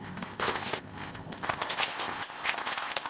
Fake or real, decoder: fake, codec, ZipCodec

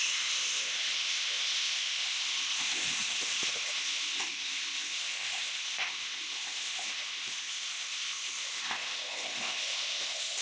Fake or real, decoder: fake, codec, ZipCodec